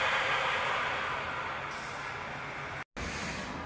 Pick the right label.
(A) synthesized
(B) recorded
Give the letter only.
B